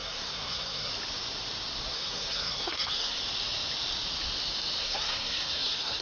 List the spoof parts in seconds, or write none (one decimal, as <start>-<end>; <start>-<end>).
0.0-0.9; 1.9-3.2; 4.8-6.0